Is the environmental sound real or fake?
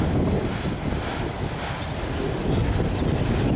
real